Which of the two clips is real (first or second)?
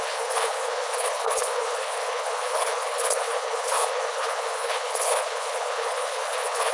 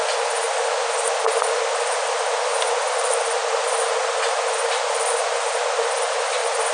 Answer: second